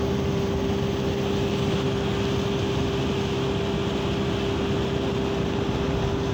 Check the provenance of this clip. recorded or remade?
recorded